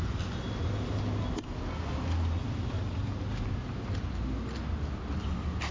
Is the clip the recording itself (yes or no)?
yes